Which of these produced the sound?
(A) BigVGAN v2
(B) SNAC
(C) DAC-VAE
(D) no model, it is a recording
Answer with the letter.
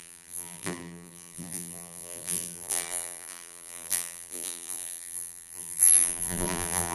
A